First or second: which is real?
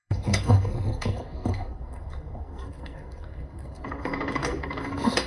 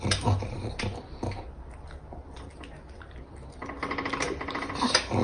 second